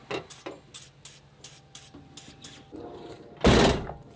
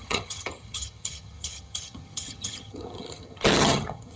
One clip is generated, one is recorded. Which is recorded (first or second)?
first